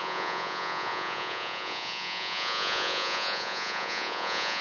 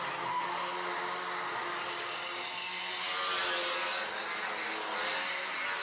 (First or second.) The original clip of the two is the second